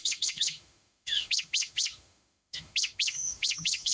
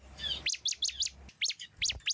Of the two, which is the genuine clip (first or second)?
second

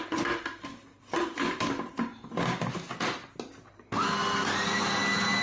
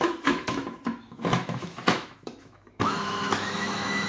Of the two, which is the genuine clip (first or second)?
first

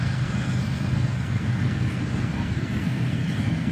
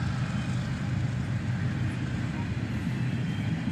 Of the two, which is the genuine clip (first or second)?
second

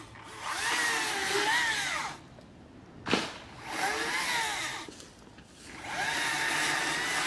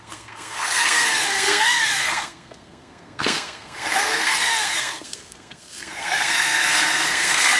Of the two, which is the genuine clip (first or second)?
first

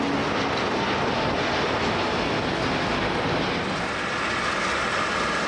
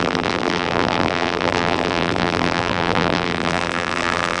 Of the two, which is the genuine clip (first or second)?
first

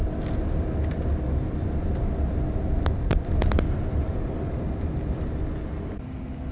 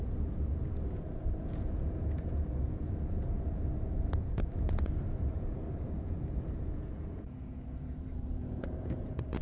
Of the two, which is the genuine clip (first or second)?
first